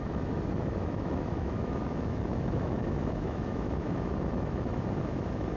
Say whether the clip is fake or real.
fake